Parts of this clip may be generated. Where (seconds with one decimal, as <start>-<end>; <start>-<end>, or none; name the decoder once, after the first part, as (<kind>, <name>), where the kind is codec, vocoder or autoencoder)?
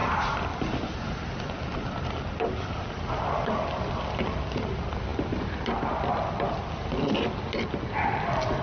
none